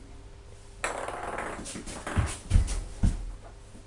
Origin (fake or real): real